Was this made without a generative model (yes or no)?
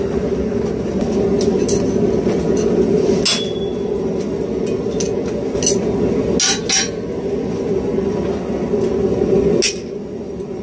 yes